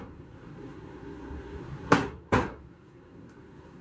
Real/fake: fake